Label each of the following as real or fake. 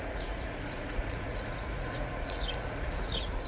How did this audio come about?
fake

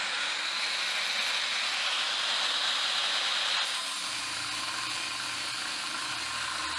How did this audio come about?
real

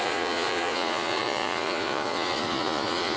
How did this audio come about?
fake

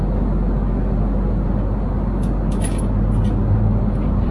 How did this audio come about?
real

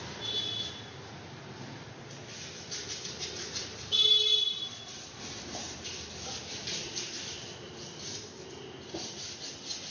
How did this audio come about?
real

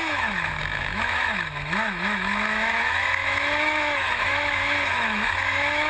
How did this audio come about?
fake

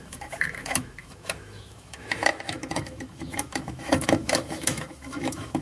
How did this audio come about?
fake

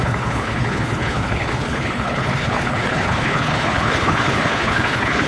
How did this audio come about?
fake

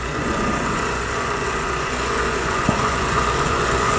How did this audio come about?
fake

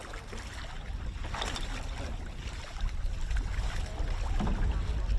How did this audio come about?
real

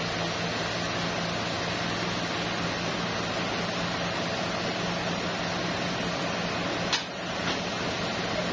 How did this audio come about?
real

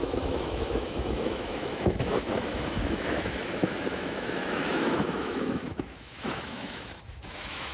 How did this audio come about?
fake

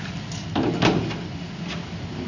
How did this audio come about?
real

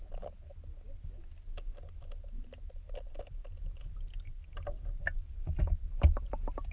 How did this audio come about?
real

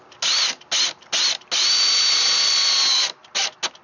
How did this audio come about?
real